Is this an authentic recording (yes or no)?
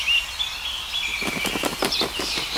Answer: yes